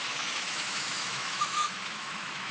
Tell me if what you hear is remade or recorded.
remade